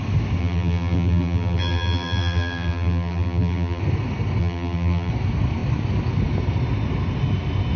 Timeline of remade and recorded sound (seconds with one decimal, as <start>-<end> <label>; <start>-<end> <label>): 0.0-0.4 recorded; 0.4-3.8 remade; 3.8-4.4 recorded; 4.4-5.1 remade; 5.1-7.8 recorded